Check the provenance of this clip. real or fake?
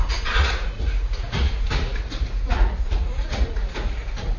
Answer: fake